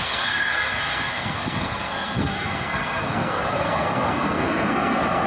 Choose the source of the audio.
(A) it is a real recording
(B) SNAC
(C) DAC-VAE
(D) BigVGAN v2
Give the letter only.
B